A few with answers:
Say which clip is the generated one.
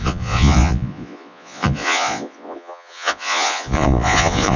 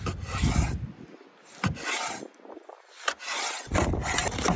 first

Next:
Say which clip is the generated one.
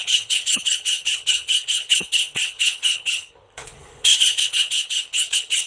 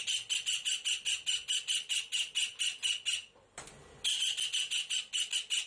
first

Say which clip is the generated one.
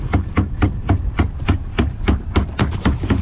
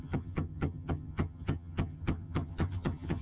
second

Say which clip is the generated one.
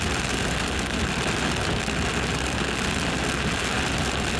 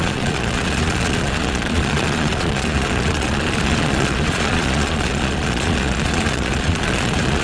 second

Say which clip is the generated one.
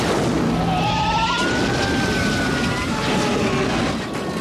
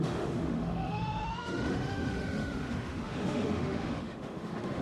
second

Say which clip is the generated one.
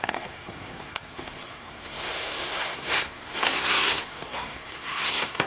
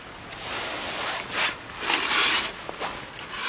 first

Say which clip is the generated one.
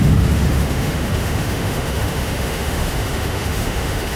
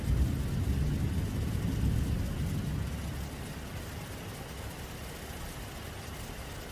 first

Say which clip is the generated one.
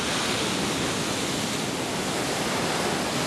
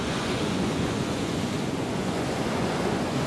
second